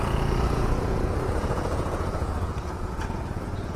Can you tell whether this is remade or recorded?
remade